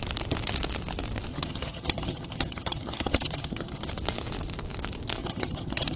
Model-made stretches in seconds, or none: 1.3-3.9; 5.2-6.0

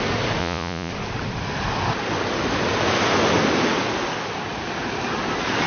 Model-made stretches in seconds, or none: 0.4-0.9

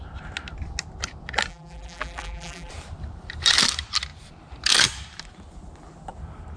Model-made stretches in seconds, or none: 1.5-2.7

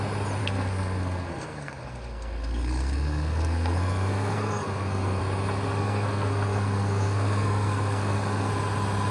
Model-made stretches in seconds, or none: 0.4-5.2; 5.8-8.5

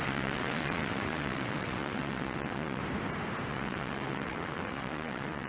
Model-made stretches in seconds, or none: 0.0-2.8; 3.5-5.5